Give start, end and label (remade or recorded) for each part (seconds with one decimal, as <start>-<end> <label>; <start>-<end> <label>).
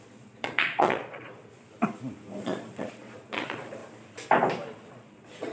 0.0-1.4 remade; 1.4-2.4 recorded; 2.4-3.8 remade; 3.8-4.9 recorded; 4.9-5.5 remade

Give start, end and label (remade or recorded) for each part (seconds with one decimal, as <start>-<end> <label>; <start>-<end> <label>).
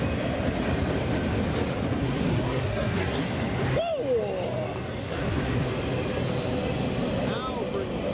0.0-2.0 recorded; 2.0-3.3 remade; 3.3-5.0 recorded; 5.0-5.7 remade; 5.7-8.1 recorded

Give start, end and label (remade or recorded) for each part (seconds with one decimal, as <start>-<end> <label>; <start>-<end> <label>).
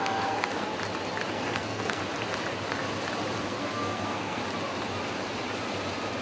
0.0-0.7 remade; 0.7-1.3 recorded; 1.3-2.0 remade; 2.0-3.4 recorded; 3.4-4.4 remade; 4.4-6.2 recorded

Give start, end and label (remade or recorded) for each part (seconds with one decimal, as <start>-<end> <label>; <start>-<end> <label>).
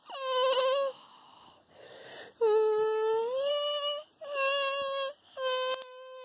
0.0-0.6 recorded; 0.6-2.1 remade; 2.1-3.5 recorded; 3.5-4.1 remade; 4.1-5.2 recorded; 5.2-6.2 remade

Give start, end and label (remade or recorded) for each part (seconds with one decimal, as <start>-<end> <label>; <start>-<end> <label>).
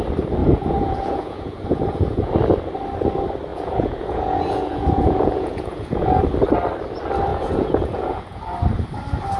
0.0-0.4 recorded; 0.4-2.3 remade; 2.3-3.5 recorded; 3.5-6.2 remade; 6.2-7.3 recorded; 7.3-8.4 remade; 8.4-9.4 recorded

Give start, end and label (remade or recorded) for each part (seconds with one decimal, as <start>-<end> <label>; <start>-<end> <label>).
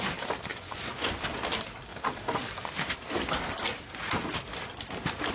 0.0-0.5 recorded; 0.5-1.1 remade; 1.1-5.3 recorded